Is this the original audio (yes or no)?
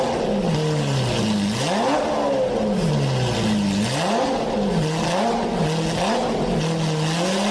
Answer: yes